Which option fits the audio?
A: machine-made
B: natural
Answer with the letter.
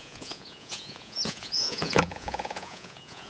A